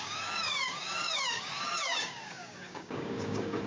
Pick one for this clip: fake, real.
fake